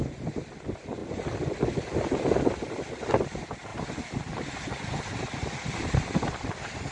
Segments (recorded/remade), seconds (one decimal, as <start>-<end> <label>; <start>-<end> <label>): 0.0-3.7 recorded; 3.7-5.2 remade; 5.2-5.8 recorded; 5.8-6.4 remade; 6.4-6.9 recorded